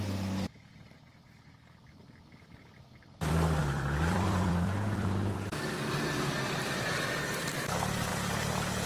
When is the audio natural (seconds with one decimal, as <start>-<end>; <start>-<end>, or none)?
none